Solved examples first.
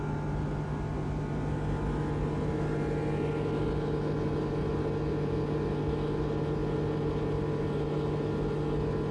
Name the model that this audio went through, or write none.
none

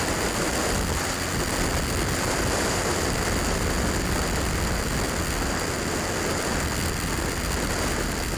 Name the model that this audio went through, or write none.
none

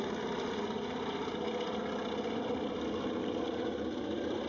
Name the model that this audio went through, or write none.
none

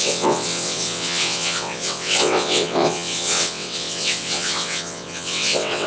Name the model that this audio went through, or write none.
vocoder, WaveNeXt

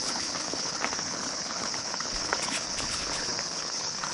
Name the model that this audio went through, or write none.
codec, HILCodec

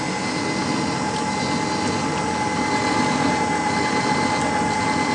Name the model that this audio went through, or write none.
none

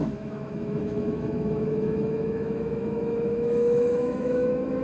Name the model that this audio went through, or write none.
autoencoder, DAC-VAE